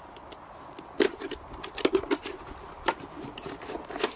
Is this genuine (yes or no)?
yes